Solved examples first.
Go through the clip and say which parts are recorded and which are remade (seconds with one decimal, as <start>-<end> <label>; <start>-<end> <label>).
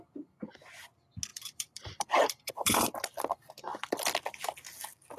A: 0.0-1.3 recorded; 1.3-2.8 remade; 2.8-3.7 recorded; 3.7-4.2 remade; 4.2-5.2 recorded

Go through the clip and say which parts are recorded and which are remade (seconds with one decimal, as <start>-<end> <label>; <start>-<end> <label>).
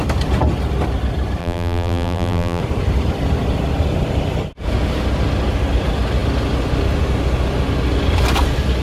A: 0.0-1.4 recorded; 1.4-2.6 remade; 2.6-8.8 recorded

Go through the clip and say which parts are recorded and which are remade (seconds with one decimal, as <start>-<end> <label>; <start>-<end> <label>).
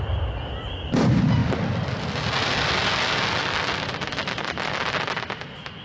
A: 0.0-5.8 recorded